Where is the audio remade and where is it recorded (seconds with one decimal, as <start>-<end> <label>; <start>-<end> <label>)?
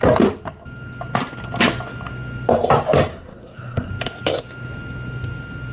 0.0-3.1 recorded; 3.1-3.9 remade; 3.9-5.7 recorded